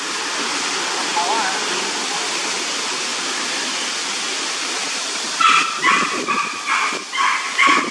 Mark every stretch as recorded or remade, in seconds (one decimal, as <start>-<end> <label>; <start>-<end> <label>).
0.0-7.9 recorded